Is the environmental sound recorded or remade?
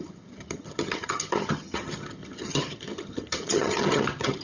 remade